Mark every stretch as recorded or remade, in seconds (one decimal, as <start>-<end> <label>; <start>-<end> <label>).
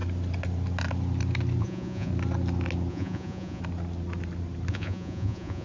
0.0-1.6 recorded; 1.6-2.1 remade; 2.1-2.9 recorded; 2.9-3.6 remade; 3.6-4.7 recorded; 4.7-5.6 remade